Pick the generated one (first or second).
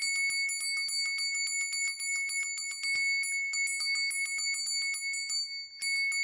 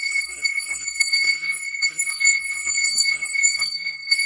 second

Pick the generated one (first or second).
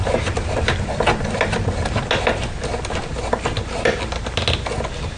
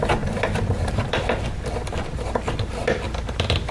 second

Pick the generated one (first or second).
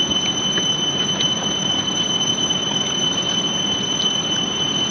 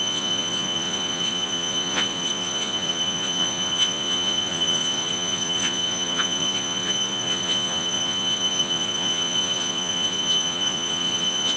second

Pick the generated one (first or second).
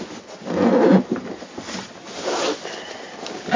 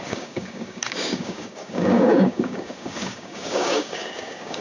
second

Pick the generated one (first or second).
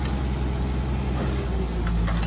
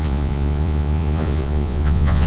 second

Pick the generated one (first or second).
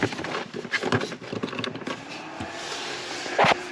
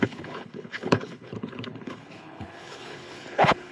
second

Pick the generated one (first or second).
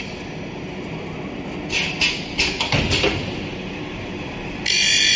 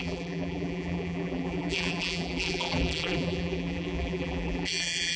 second